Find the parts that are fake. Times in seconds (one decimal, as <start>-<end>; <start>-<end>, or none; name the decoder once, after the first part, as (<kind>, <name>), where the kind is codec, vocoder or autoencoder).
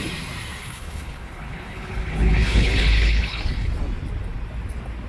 0.6-3.7 (codec, HILCodec)